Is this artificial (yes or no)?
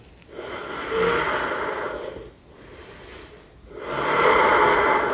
no